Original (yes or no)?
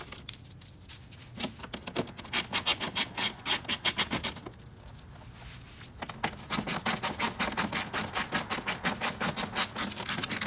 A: yes